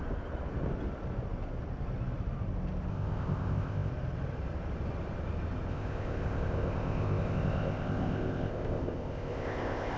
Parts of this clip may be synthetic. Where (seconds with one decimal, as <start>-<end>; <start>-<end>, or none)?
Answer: 2.9-3.9; 5.7-10.0